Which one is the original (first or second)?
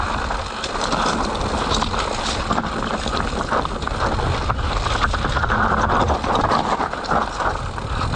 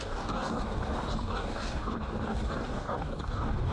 first